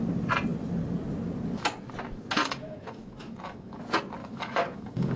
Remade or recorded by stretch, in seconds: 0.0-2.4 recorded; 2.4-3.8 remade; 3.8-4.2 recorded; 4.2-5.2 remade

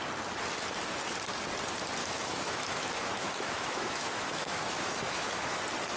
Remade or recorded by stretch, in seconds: 0.0-2.0 recorded; 2.0-5.6 remade; 5.6-6.0 recorded

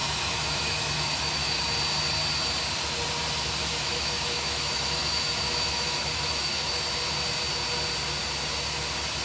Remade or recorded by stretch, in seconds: 0.0-1.6 remade; 1.6-3.6 recorded; 3.6-6.7 remade; 6.7-9.2 recorded

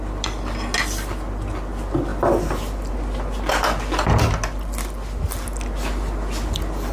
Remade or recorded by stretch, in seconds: 0.0-6.9 recorded

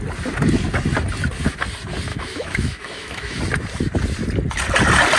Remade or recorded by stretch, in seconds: 0.0-2.1 recorded; 2.1-3.4 remade; 3.4-5.2 recorded

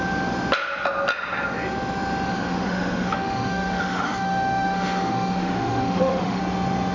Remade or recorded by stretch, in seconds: 0.0-2.3 recorded; 2.3-6.4 remade; 6.4-6.9 recorded

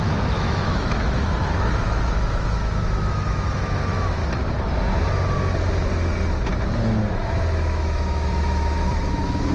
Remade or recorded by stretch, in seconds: 0.0-4.2 remade; 4.2-7.1 recorded; 7.1-9.5 remade